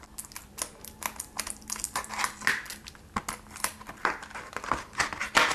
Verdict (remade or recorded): recorded